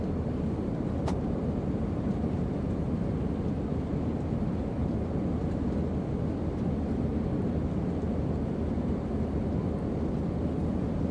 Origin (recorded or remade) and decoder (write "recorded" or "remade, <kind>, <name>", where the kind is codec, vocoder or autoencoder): recorded